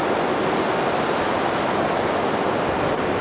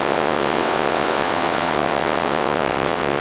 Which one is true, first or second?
first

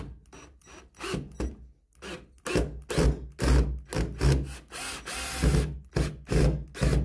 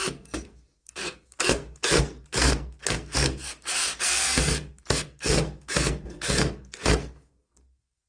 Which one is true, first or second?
first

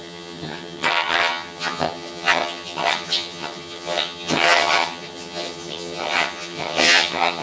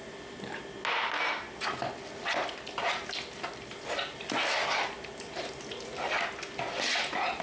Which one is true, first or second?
second